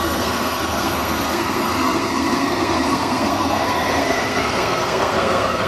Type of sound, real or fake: fake